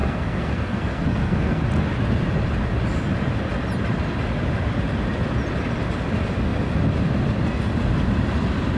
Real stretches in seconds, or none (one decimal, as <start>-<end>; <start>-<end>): 1.6-8.8